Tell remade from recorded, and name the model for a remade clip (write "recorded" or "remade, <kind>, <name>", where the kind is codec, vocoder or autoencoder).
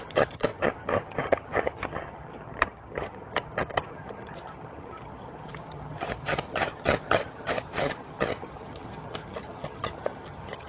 remade, vocoder, HiFi-GAN